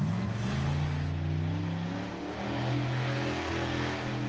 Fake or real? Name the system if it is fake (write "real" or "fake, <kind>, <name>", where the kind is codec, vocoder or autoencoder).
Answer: real